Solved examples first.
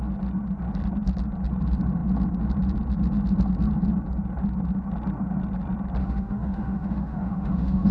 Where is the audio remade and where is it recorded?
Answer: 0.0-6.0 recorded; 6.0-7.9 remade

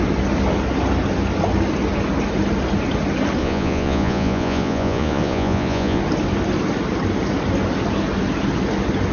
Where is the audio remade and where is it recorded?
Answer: 0.0-3.4 recorded; 3.4-6.0 remade; 6.0-9.1 recorded

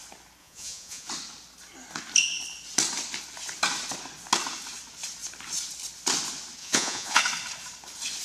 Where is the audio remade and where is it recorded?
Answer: 0.0-0.4 recorded; 0.4-1.1 remade; 1.1-6.6 recorded; 6.6-7.2 remade; 7.2-8.2 recorded

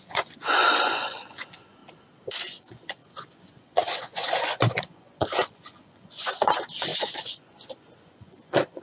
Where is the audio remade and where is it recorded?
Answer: 0.0-1.8 remade; 1.8-2.4 recorded; 2.4-8.8 remade

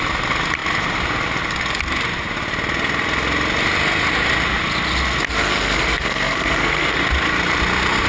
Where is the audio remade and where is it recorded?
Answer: 0.0-5.4 recorded; 5.4-7.0 remade; 7.0-8.1 recorded

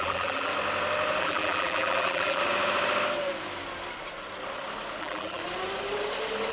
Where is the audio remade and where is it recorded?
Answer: 0.0-0.5 remade; 0.5-1.2 recorded; 1.2-2.4 remade; 2.4-5.0 recorded; 5.0-5.4 remade; 5.4-6.5 recorded